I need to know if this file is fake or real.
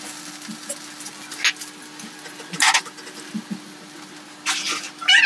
real